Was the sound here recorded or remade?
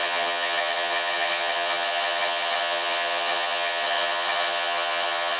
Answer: remade